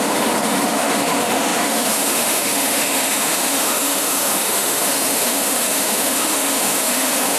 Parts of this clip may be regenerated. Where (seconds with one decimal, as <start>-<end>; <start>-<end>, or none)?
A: 0.0-7.4